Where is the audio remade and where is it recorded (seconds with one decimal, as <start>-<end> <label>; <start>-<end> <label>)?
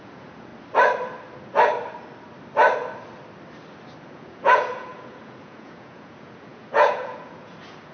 0.0-0.5 remade; 0.5-4.0 recorded; 4.0-7.9 remade